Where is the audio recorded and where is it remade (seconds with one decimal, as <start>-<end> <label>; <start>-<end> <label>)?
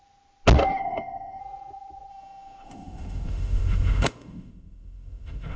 0.0-0.7 recorded; 0.7-1.4 remade; 1.4-2.1 recorded; 2.1-5.6 remade